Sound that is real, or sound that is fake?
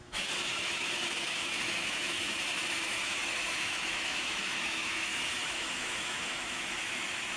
fake